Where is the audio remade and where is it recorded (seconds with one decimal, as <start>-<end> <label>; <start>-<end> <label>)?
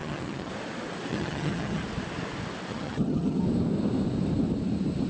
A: 0.0-0.5 remade; 0.5-1.1 recorded; 1.1-1.8 remade; 1.8-2.7 recorded; 2.7-3.4 remade; 3.4-5.1 recorded